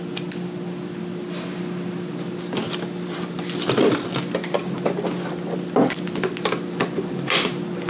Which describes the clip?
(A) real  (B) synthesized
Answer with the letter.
A